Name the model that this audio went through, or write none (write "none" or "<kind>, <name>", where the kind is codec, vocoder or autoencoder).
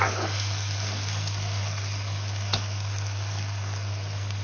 codec, SNAC